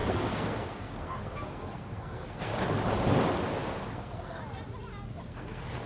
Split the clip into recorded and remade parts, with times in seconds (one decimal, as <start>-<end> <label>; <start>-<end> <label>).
0.0-2.5 remade; 2.5-3.9 recorded; 3.9-4.4 remade; 4.4-5.1 recorded; 5.1-5.9 remade